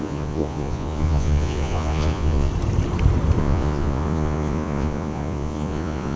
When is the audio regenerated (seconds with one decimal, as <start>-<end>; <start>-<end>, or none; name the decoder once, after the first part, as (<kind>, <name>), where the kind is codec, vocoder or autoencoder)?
0.0-2.5 (vocoder, Vocos); 3.4-6.2